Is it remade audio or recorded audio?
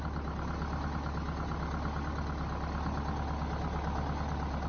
recorded